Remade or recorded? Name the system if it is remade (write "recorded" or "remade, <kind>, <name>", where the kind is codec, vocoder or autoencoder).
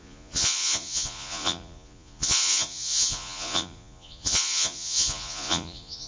remade, vocoder, Vocos